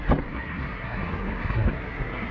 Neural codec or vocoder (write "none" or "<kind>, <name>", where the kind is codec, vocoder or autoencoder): codec, SNAC